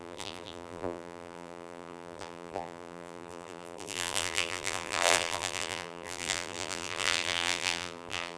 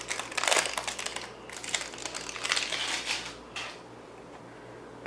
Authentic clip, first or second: second